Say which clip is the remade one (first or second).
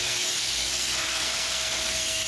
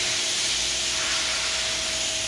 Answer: first